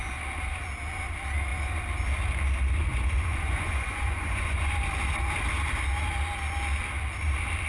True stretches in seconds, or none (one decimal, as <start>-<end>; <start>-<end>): 0.0-2.9; 4.8-7.7